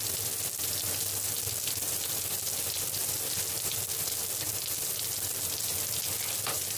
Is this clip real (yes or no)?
yes